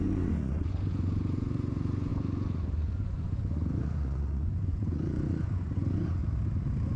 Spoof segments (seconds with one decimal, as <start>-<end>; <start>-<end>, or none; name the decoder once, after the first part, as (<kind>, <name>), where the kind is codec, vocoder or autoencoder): 0.0-6.2 (vocoder, Vocos)